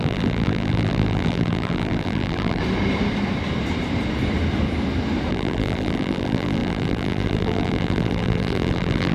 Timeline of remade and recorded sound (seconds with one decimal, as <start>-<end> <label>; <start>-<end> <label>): 0.0-2.6 remade; 2.6-5.3 recorded; 5.3-9.1 remade